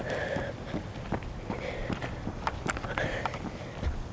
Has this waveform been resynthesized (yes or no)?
no